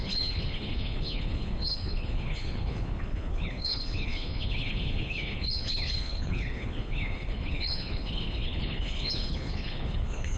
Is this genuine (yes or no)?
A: no